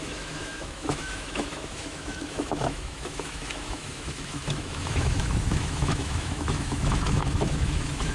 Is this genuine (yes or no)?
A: no